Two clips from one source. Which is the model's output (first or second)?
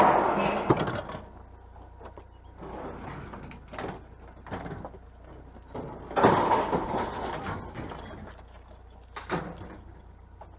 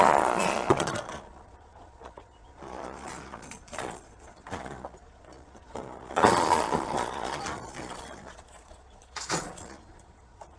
second